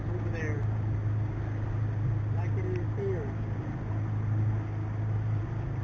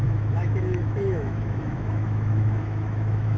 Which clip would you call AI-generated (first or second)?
second